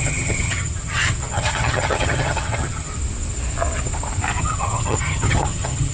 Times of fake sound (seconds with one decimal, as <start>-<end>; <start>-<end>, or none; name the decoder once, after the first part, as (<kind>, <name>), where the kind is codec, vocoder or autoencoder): 0.0-2.9 (vocoder, HiFi-GAN); 4.4-5.9